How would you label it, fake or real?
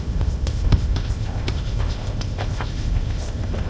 fake